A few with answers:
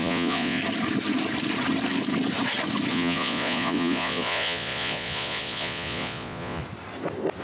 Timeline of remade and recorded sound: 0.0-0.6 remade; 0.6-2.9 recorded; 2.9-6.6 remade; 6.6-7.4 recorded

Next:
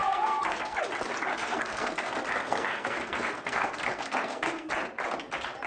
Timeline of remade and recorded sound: 0.0-0.8 remade; 0.8-1.3 recorded; 1.3-4.7 remade; 4.7-5.7 recorded

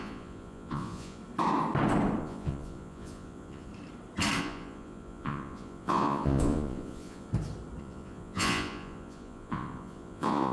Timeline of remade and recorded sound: 0.0-1.2 remade; 1.2-2.2 recorded; 2.2-3.7 remade; 3.7-4.4 recorded; 4.4-7.3 remade; 7.3-7.8 recorded; 7.8-10.5 remade

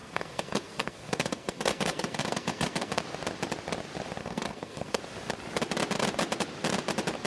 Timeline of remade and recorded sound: 0.0-3.0 remade; 3.0-4.2 recorded; 4.2-5.0 remade; 5.0-7.3 recorded

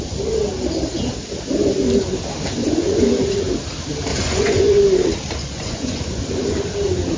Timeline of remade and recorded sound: 0.0-2.6 recorded; 2.6-3.5 remade; 3.5-4.1 recorded; 4.1-4.7 remade; 4.7-5.4 recorded; 5.4-6.2 remade; 6.2-7.2 recorded